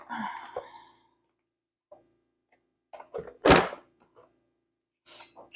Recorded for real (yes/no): yes